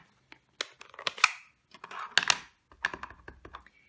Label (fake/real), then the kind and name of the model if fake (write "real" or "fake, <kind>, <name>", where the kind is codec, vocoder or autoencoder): real